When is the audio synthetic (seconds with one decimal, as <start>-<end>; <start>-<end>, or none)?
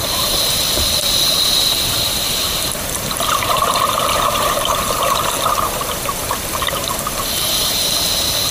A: 0.0-8.5